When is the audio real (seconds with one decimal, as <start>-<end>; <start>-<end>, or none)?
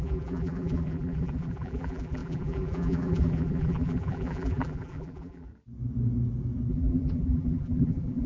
5.5-6.7